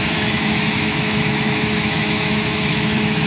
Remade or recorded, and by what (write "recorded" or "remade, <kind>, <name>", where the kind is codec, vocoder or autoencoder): remade, autoencoder, DAC-VAE